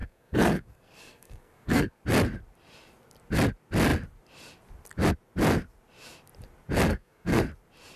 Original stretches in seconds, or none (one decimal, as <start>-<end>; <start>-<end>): 2.0-6.9; 7.4-8.0

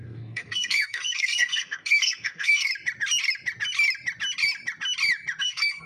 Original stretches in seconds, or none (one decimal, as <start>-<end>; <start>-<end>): 2.7-5.4

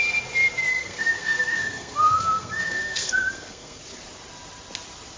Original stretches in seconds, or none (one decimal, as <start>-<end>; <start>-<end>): 0.0-0.7; 3.8-5.2

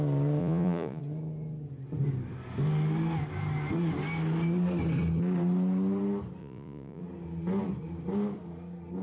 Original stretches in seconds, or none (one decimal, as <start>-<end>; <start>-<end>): 0.0-0.4; 1.0-6.4; 7.0-9.0